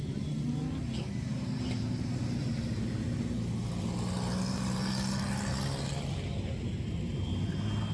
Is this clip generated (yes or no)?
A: no